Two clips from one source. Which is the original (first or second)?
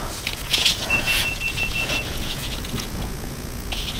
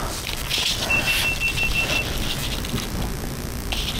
second